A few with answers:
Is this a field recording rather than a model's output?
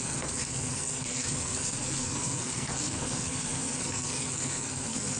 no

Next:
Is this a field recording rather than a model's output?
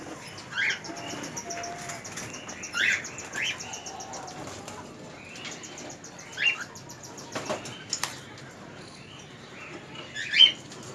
yes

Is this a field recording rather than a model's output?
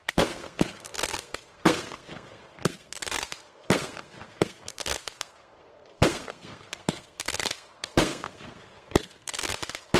no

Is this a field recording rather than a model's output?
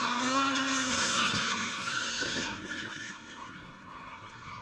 no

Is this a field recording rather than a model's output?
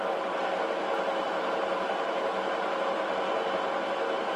yes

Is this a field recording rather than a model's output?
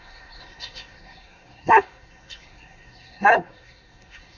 no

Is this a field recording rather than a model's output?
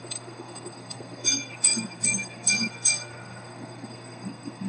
no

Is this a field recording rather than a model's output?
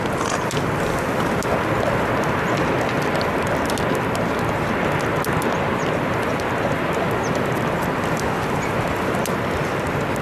yes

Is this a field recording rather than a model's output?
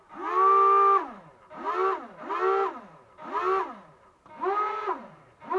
yes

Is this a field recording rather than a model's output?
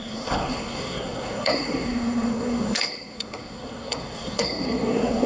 no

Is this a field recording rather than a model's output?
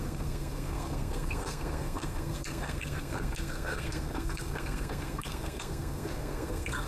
no